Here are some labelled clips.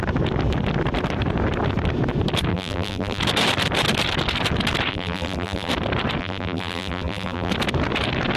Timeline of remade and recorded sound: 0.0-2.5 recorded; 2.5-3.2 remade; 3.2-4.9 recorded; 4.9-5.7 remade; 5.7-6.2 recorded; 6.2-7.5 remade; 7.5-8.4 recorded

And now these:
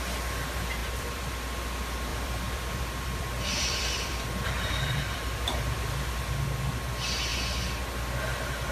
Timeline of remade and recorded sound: 0.0-0.8 recorded; 0.8-1.3 remade; 1.3-2.1 recorded; 2.1-5.9 remade; 5.9-8.7 recorded

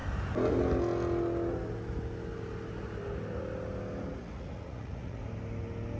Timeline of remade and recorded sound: 0.0-4.2 recorded; 4.2-5.2 remade; 5.2-6.0 recorded